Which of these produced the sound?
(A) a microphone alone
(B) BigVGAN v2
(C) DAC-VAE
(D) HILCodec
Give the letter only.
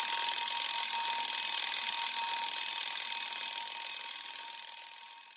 A